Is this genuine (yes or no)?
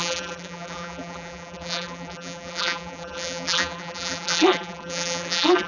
no